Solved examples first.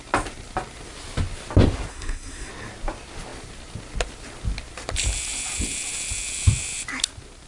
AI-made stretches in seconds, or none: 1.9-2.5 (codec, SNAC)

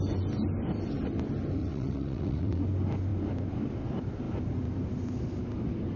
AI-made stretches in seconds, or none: 1.6-2.6 (vocoder, WaveNeXt)

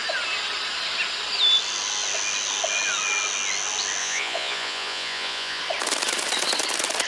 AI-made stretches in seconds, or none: 4.0-5.6 (vocoder, Vocos)

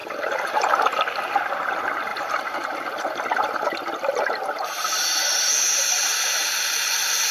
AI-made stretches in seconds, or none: 0.0-1.0 (vocoder, BigVGAN v2); 2.1-2.9; 4.1-6.5

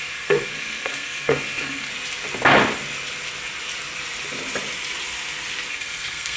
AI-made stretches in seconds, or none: 0.0-1.9 (codec, SNAC); 5.7-6.4